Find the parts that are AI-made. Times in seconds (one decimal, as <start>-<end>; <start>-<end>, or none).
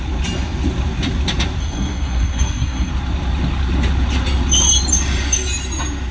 1.6-2.9